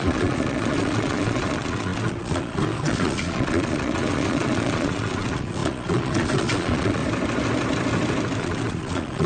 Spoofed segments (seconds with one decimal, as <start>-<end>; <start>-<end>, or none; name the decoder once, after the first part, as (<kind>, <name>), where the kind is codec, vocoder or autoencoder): 0.0-7.0 (vocoder, Vocos); 8.4-9.3